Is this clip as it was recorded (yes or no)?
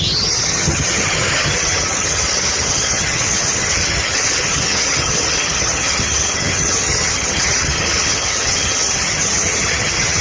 no